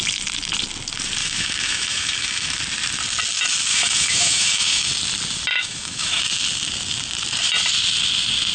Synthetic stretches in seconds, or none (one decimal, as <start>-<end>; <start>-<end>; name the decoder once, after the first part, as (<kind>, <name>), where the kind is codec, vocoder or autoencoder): 1.2-2.6 (autoencoder, DAC-VAE); 3.7-4.9; 5.5-6.2